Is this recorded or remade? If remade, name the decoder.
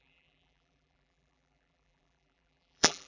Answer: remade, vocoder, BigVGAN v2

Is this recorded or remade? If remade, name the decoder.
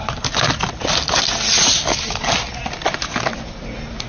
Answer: recorded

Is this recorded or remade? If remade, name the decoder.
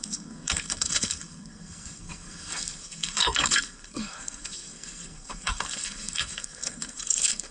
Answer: remade, codec, SNAC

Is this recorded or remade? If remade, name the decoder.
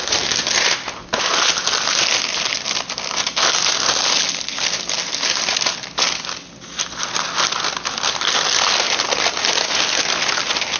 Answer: recorded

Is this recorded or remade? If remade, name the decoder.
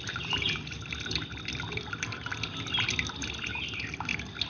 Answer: recorded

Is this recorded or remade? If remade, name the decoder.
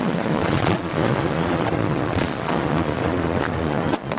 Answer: remade, vocoder, Vocos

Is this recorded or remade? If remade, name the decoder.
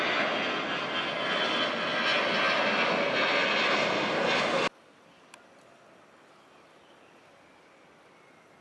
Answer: recorded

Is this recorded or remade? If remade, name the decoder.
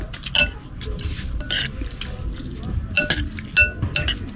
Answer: recorded